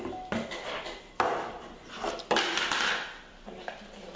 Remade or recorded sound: recorded